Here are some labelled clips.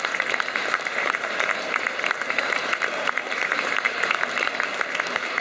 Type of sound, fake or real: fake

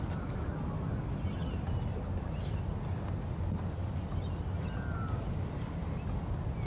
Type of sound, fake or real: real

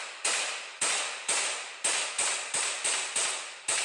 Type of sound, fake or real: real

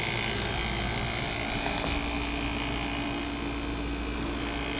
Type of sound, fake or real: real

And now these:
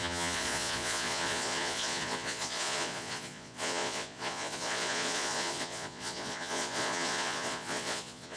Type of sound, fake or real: fake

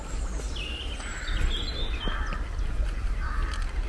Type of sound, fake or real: real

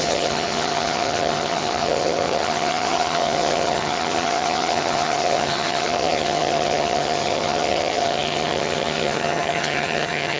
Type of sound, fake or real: fake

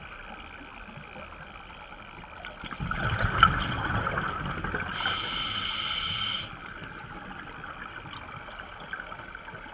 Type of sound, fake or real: real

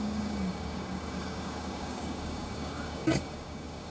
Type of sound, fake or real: fake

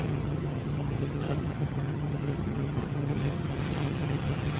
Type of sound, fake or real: fake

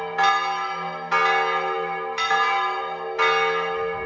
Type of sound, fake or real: real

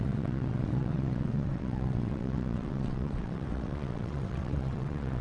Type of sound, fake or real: fake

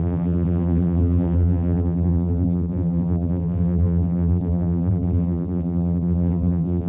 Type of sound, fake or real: fake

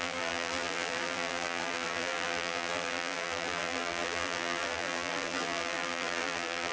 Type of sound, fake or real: fake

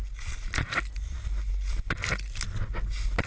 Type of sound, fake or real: real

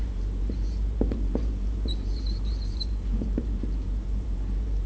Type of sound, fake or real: fake